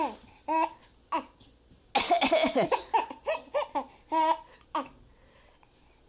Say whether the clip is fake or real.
real